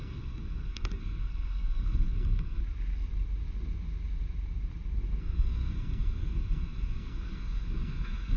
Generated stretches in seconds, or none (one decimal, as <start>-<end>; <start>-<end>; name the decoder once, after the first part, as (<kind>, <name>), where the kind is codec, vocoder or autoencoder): 0.0-2.6 (codec, SNAC); 5.2-8.4